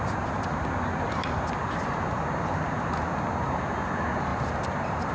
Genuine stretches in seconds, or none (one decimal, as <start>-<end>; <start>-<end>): 0.0-4.3